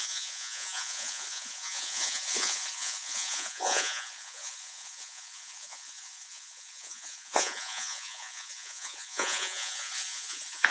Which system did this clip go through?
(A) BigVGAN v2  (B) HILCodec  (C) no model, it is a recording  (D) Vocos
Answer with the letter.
D